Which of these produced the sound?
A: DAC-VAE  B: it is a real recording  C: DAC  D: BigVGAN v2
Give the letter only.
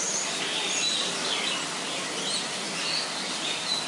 B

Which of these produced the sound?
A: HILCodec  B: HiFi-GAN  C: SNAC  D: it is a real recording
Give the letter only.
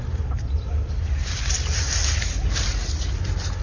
D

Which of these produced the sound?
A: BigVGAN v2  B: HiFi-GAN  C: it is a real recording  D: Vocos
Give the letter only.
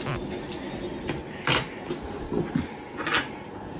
C